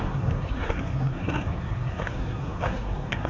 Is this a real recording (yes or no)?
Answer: no